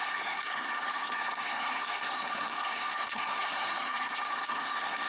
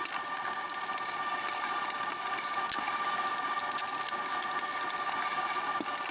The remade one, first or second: first